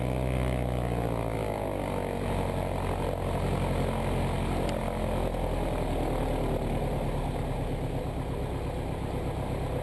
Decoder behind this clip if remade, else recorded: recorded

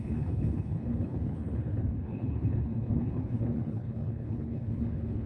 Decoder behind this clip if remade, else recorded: remade, codec, HILCodec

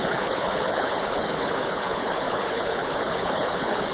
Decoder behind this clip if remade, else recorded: remade, codec, HILCodec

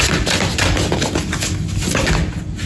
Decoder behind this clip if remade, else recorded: recorded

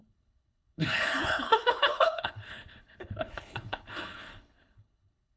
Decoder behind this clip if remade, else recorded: remade, codec, HILCodec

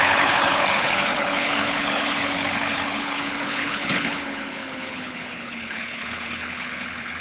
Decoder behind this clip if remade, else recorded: remade, codec, HILCodec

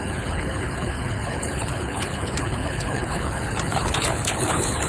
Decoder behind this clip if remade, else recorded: remade, codec, HILCodec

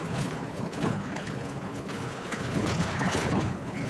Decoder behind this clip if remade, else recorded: remade, codec, HILCodec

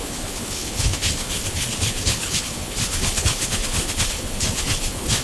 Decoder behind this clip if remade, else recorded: remade, codec, HILCodec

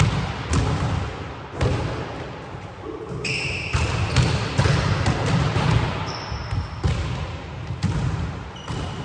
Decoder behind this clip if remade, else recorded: recorded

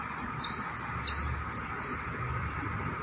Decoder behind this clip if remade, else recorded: recorded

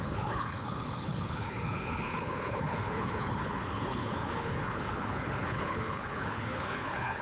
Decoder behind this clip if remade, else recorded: remade, codec, HILCodec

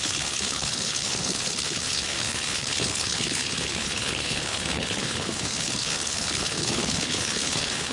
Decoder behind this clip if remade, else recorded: remade, codec, HILCodec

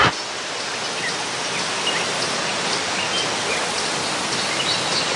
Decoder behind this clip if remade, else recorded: recorded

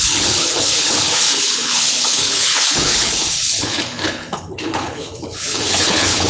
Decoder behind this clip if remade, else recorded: remade, codec, HILCodec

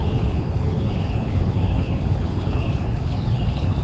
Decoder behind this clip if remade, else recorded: remade, codec, HILCodec